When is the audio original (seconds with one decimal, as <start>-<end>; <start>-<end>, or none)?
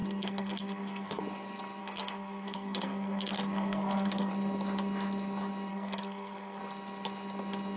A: 1.2-1.8; 4.3-5.7; 6.6-7.8